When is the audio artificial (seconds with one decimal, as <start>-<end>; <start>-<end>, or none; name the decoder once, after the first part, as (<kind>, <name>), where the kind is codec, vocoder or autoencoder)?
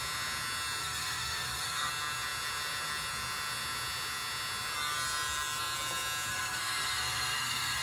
0.8-1.9 (codec, SNAC); 6.3-7.8